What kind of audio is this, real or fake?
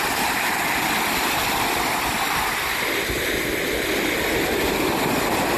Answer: real